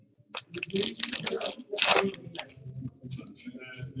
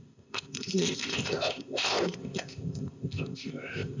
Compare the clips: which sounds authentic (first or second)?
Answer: first